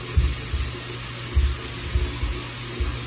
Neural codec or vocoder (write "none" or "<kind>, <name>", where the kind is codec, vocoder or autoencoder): none